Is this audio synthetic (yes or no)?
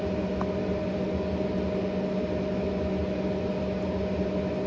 no